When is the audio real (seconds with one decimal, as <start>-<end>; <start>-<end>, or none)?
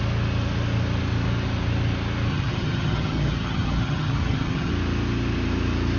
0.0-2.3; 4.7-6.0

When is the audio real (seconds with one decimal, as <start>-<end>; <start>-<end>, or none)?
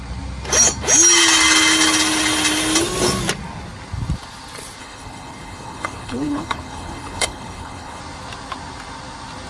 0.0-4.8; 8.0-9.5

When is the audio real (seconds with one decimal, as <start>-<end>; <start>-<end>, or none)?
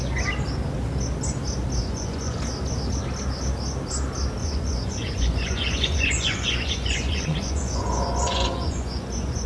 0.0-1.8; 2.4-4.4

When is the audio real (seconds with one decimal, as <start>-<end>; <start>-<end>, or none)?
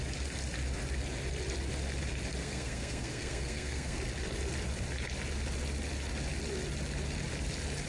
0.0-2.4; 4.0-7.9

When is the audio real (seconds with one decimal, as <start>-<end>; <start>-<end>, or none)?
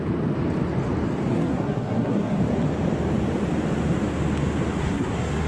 0.0-1.3; 2.4-4.8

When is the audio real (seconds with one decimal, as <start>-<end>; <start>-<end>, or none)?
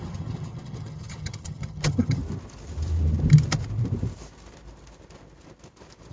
2.2-6.1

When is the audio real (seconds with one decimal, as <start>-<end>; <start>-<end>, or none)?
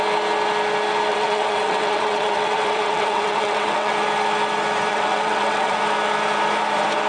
0.0-1.1; 3.9-4.9; 5.8-7.1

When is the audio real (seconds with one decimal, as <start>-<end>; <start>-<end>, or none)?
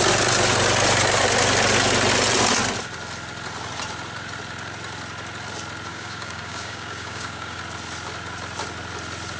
0.0-5.9; 7.6-9.4